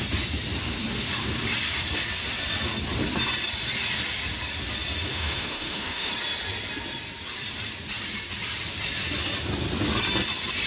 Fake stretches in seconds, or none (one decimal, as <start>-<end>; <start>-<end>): 5.1-6.1